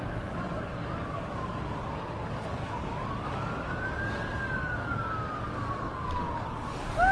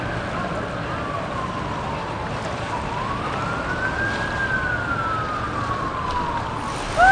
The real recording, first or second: second